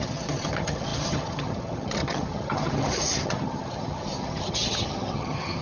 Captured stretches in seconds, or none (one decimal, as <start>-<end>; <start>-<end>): none